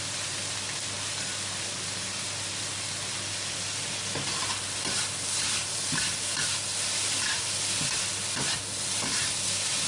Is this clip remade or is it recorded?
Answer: recorded